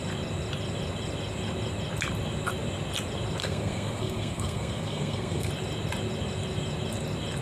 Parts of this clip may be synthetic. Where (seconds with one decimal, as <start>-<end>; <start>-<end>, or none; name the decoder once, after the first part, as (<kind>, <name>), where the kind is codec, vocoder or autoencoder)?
3.4-5.5 (codec, SNAC)

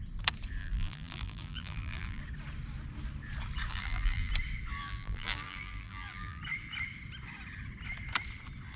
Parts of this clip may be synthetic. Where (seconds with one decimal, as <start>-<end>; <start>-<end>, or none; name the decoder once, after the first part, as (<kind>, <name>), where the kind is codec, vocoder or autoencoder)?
0.6-2.2 (vocoder, BigVGAN v2); 3.7-4.3; 4.8-6.4

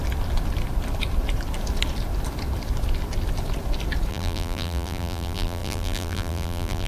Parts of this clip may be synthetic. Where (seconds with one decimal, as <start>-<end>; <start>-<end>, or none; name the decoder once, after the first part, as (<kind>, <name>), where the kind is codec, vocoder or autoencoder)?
4.1-6.9 (vocoder, BigVGAN v2)

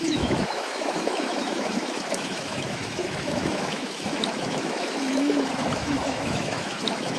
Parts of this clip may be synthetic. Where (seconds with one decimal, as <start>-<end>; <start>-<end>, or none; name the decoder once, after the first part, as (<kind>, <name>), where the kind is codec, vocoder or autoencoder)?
0.0-7.2 (autoencoder, DAC-VAE)

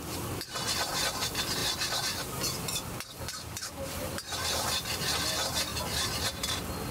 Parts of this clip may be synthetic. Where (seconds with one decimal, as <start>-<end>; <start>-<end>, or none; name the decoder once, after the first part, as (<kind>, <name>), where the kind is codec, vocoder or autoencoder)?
none